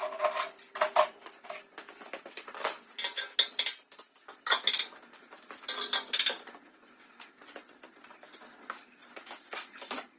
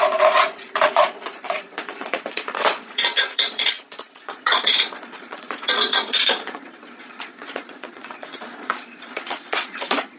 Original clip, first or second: first